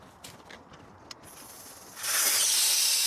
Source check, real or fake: real